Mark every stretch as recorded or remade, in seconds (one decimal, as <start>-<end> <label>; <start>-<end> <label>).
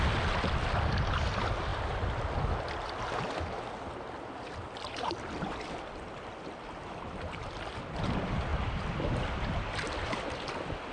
0.0-1.7 remade; 1.7-4.6 recorded; 4.6-8.5 remade; 8.5-9.2 recorded; 9.2-10.9 remade